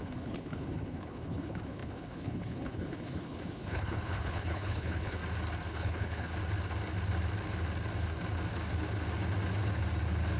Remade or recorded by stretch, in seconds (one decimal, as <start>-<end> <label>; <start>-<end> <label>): 0.0-5.2 remade; 5.2-5.7 recorded; 5.7-6.3 remade; 6.3-10.4 recorded